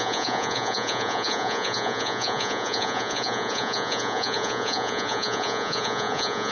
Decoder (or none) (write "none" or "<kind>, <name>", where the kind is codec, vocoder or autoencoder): vocoder, Vocos